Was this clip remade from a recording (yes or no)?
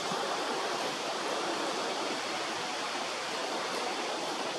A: no